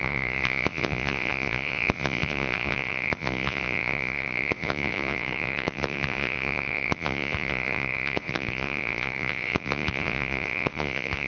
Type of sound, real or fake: fake